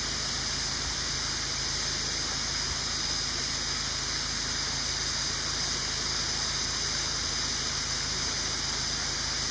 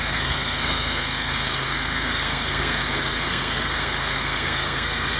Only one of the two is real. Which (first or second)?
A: first